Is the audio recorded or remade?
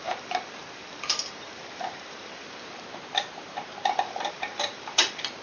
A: remade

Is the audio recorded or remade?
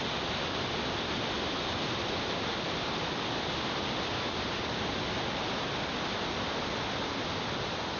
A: recorded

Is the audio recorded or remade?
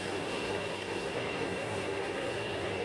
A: remade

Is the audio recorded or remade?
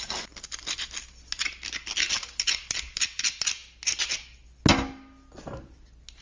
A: recorded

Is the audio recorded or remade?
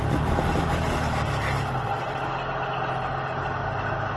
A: recorded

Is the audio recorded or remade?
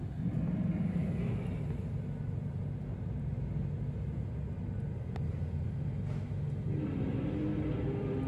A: recorded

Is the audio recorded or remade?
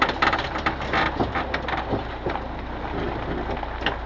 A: recorded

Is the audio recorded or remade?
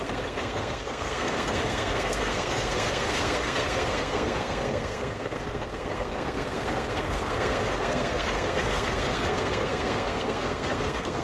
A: remade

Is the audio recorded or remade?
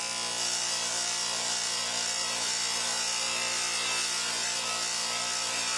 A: recorded